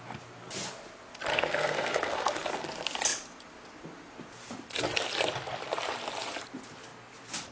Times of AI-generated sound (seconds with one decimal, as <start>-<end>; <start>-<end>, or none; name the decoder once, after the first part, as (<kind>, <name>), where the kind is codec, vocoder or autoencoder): 1.3-2.5 (codec, SNAC)